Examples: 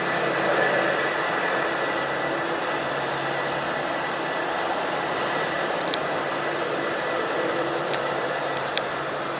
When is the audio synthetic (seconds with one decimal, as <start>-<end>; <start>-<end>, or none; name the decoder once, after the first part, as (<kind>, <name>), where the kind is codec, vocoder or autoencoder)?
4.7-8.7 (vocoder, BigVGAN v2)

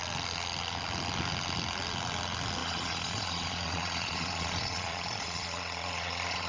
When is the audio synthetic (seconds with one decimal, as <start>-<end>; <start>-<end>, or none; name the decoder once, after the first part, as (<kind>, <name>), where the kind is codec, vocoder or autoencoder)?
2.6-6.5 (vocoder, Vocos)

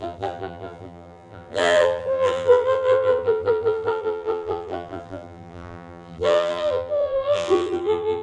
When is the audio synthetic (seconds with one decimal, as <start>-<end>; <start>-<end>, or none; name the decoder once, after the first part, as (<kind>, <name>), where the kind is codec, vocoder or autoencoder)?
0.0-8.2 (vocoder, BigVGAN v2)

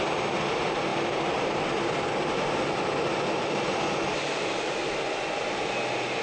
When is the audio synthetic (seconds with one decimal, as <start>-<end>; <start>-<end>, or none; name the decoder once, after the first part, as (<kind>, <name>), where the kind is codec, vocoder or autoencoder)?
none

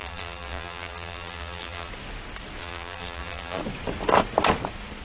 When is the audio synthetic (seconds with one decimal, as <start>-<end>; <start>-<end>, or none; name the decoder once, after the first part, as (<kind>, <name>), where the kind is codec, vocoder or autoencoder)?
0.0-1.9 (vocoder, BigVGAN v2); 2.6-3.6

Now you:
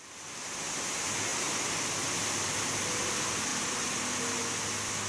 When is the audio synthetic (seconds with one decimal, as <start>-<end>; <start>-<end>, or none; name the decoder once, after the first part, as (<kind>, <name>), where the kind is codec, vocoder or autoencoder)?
none

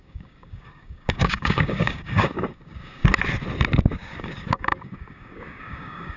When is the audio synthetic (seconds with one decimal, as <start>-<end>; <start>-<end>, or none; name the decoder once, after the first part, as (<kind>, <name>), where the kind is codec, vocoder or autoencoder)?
0.0-3.0 (codec, DAC); 3.8-6.2

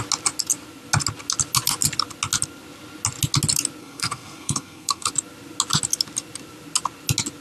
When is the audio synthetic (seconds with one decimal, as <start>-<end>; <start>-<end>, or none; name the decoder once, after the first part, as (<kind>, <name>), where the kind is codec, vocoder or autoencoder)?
3.8-5.1 (codec, SNAC)